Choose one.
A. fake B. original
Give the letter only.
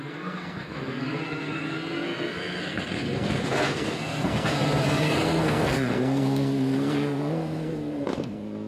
A